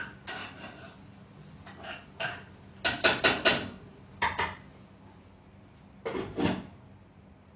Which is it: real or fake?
real